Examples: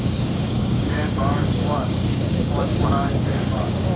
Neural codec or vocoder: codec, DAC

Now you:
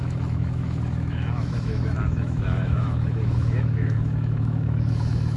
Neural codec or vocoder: autoencoder, DAC-VAE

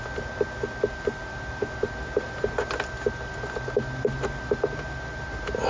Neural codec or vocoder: none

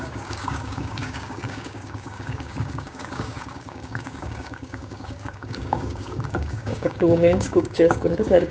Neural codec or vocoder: codec, DAC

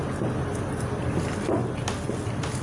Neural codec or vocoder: none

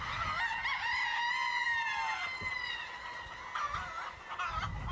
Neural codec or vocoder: none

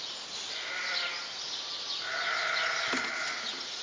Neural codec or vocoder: none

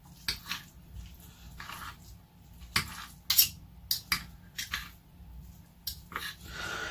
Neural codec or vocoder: none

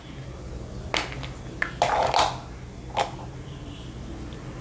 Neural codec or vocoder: none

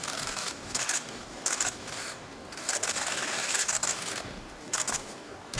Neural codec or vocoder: codec, DAC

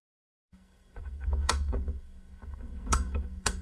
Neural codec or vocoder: codec, SNAC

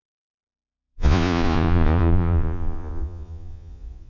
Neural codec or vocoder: vocoder, Vocos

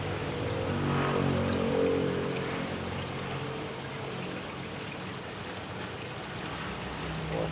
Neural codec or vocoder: none